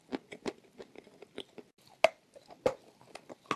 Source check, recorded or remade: recorded